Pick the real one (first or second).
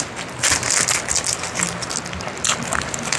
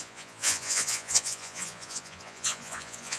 first